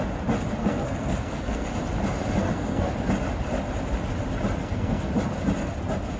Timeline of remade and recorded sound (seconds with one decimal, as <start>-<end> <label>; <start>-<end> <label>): 0.0-0.6 recorded; 0.6-1.7 remade; 1.7-2.4 recorded; 2.4-2.9 remade; 2.9-4.6 recorded; 4.6-5.1 remade; 5.1-6.2 recorded